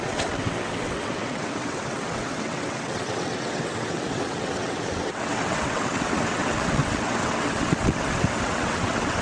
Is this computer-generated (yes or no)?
yes